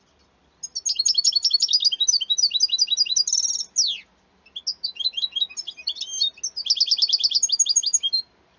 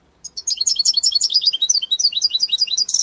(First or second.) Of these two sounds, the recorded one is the first